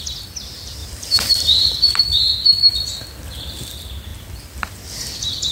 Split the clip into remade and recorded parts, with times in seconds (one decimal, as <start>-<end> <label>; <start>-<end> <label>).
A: 0.0-0.8 recorded; 0.8-2.0 remade; 2.0-4.1 recorded; 4.1-5.0 remade; 5.0-5.5 recorded